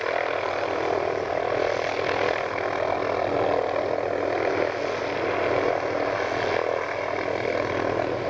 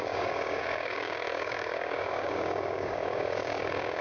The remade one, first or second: second